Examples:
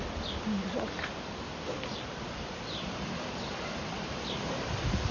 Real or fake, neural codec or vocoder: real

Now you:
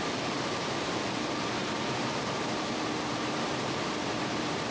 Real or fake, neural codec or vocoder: fake, vocoder, BigVGAN v2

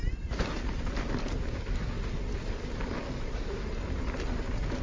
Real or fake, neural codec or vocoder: real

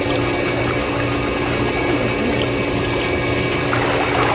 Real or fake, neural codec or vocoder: real